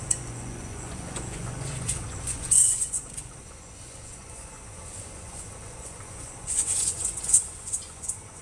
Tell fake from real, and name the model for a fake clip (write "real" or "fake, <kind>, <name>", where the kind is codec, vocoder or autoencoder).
fake, vocoder, Vocos